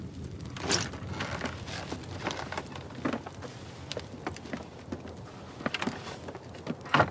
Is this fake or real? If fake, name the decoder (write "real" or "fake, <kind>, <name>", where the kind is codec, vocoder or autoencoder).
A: real